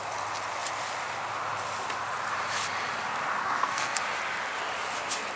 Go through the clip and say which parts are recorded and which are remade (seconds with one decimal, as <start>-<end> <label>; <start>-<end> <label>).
0.0-3.4 recorded; 3.4-4.0 remade; 4.0-5.4 recorded